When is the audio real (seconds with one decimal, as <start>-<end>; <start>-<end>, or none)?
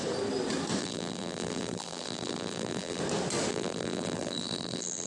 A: 0.0-0.8; 3.0-3.5